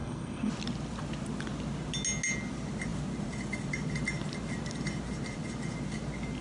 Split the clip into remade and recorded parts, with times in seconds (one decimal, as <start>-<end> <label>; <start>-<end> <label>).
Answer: 0.0-0.5 remade; 0.5-6.4 recorded